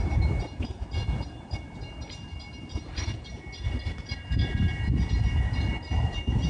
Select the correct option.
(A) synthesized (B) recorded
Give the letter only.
B